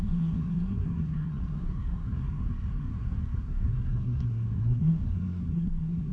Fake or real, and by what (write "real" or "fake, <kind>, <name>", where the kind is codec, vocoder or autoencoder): fake, codec, SNAC